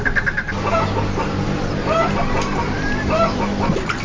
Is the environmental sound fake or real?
real